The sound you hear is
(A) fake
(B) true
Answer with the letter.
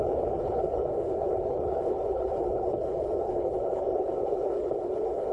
A